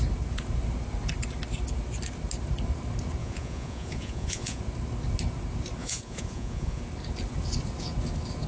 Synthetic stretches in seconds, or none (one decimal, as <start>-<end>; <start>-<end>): 3.2-4.6; 5.8-6.8